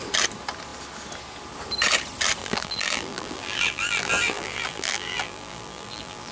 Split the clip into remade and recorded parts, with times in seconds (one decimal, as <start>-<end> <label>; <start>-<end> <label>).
0.0-2.4 recorded; 2.4-6.3 remade